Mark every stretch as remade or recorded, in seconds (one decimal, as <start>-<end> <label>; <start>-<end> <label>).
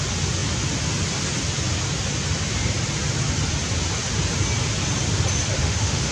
0.0-5.6 recorded; 5.6-6.1 remade